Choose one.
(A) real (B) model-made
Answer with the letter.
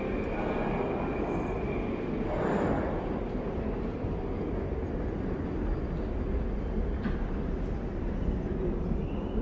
A